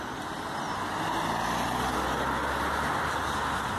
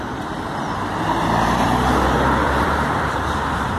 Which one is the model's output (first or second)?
second